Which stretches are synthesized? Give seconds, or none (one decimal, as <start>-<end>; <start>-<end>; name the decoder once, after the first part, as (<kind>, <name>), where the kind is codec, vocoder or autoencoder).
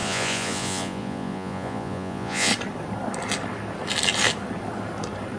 0.0-2.5 (vocoder, Vocos)